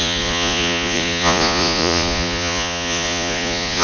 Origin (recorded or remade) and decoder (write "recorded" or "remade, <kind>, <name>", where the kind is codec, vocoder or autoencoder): remade, vocoder, Vocos